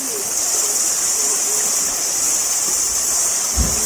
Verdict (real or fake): fake